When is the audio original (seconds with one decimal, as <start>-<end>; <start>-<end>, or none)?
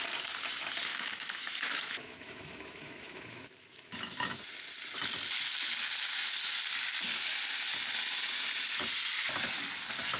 0.0-0.9; 4.4-10.2